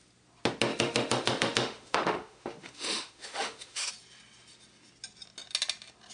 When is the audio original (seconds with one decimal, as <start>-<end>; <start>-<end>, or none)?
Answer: 0.0-0.7; 3.9-6.1